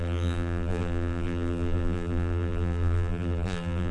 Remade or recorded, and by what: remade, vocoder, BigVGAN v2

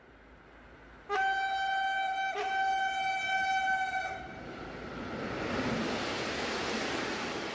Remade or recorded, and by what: recorded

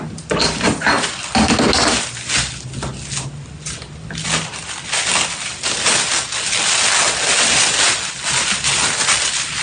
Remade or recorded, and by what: recorded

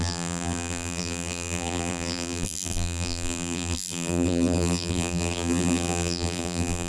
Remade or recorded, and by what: remade, vocoder, BigVGAN v2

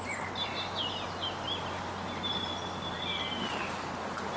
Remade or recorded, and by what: recorded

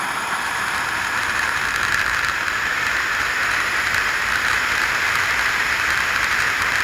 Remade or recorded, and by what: remade, vocoder, BigVGAN v2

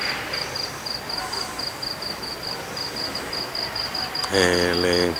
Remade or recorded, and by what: recorded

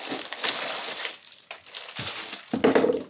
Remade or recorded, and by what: recorded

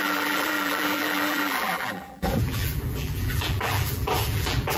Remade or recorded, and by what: remade, vocoder, BigVGAN v2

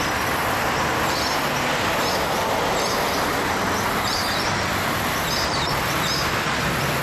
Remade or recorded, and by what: recorded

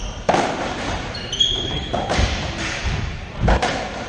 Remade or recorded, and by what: remade, vocoder, BigVGAN v2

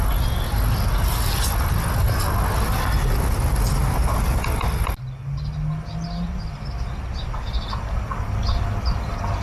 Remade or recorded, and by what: recorded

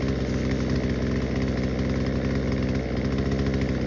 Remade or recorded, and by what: recorded